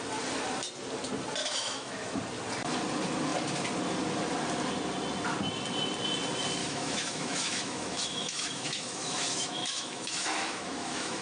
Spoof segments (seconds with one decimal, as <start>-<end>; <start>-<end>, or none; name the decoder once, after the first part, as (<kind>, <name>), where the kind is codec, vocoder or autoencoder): 1.4-2.2 (autoencoder, DAC-VAE); 6.6-11.2